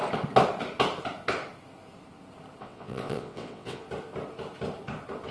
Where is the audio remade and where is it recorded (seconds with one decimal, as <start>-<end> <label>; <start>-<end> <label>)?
0.0-2.6 recorded; 2.6-3.8 remade; 3.8-5.3 recorded